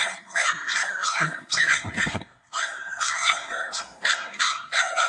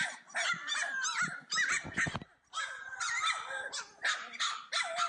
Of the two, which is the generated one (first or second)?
first